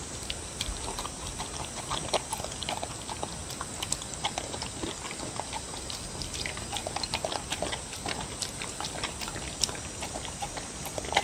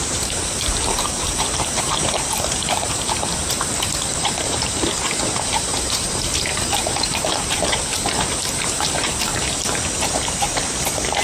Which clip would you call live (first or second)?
first